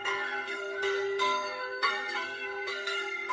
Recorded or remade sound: remade